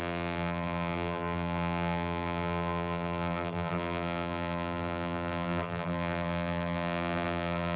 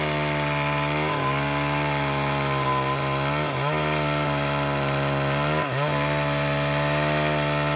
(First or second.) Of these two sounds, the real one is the second